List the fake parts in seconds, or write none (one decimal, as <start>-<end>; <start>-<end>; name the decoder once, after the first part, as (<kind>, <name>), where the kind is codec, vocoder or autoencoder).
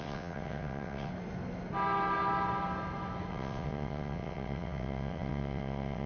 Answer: 0.0-1.1 (vocoder, WaveNeXt); 3.3-6.1